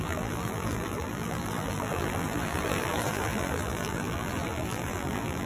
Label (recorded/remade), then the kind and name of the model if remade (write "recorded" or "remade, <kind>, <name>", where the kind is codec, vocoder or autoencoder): remade, vocoder, BigVGAN v2